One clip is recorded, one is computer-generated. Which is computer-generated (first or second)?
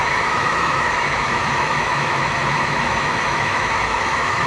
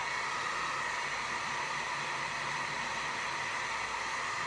first